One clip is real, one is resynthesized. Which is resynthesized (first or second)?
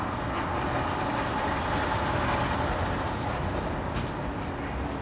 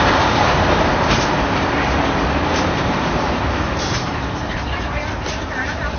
second